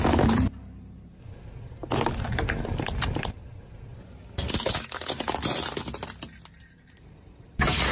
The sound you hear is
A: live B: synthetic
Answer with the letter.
A